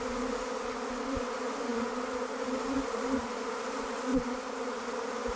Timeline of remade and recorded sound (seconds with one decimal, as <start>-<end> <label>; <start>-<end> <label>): 0.0-4.1 recorded; 4.1-4.8 remade; 4.8-5.4 recorded